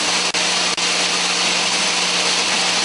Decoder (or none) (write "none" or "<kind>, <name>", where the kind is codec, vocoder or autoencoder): none